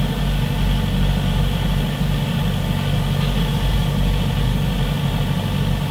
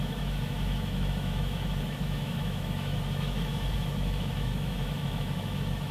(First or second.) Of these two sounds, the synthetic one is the second